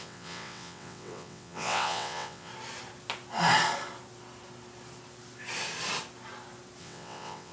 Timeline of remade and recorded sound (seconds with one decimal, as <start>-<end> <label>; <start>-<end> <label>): 0.0-2.5 remade; 2.5-6.8 recorded; 6.8-7.5 remade